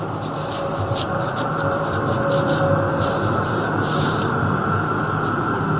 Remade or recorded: recorded